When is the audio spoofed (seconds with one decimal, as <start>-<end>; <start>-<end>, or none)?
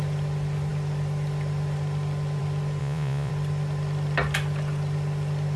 2.8-3.3